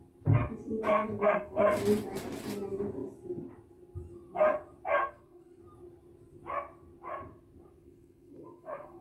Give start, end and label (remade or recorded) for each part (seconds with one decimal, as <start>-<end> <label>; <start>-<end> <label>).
0.0-0.9 recorded; 0.9-1.8 remade; 1.8-5.0 recorded; 5.0-5.6 remade; 5.6-7.8 recorded; 7.8-9.0 remade